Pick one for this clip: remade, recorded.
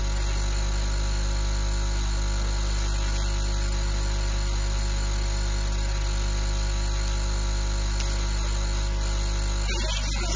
recorded